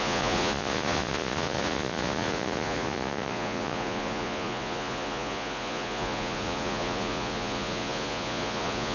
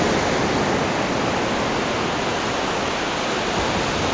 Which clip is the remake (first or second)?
first